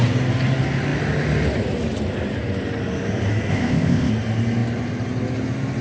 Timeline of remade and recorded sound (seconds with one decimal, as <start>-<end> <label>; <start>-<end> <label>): 0.0-3.5 recorded; 3.5-4.1 remade; 4.1-5.8 recorded